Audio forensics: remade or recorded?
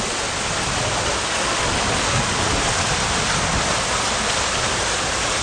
recorded